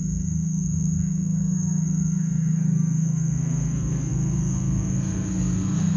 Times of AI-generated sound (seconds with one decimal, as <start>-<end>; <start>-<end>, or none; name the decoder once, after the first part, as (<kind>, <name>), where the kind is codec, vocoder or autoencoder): 0.0-6.0 (codec, SNAC)